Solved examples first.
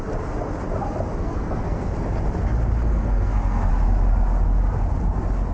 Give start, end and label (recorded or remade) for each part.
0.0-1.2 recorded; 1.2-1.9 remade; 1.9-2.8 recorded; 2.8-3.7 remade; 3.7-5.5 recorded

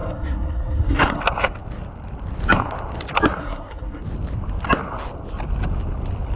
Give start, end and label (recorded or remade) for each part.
0.0-1.2 remade; 1.2-3.4 recorded; 3.4-4.0 remade; 4.0-6.4 recorded

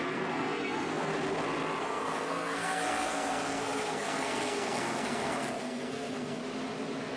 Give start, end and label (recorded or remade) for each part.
0.0-1.1 remade; 1.1-1.8 recorded; 1.8-6.4 remade; 6.4-7.2 recorded

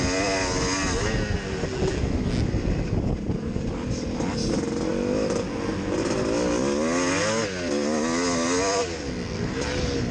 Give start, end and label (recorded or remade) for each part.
0.0-10.1 recorded

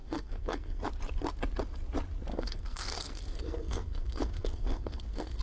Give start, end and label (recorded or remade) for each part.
0.0-0.8 remade; 0.8-2.3 recorded; 2.3-5.4 remade

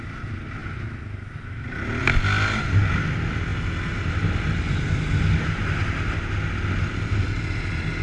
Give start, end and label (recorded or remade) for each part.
0.0-8.0 recorded

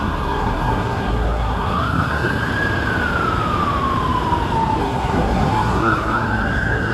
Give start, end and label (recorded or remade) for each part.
0.0-2.5 remade; 2.5-4.8 recorded; 4.8-6.9 remade

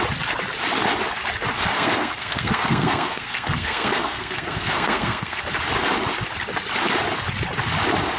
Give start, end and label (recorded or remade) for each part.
0.0-1.7 recorded; 1.7-5.4 remade; 5.4-8.2 recorded